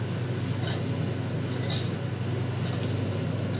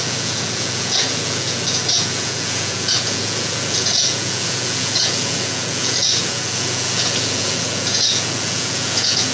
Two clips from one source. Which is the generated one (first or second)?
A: second